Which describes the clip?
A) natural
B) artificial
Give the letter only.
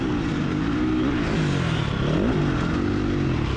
A